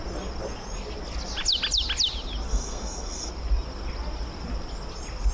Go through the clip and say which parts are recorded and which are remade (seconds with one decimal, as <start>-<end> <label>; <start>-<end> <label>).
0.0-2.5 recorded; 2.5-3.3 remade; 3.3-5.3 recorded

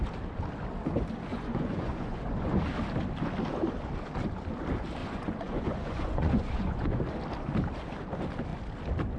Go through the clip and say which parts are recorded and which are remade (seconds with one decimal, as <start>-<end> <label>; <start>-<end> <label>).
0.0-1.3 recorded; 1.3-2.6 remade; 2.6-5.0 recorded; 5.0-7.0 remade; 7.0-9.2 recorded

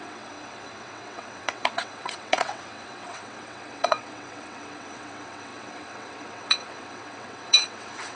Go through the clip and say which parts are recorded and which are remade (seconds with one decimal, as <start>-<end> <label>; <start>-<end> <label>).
0.0-8.2 remade